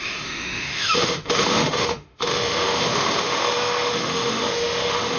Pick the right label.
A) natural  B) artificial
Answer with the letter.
B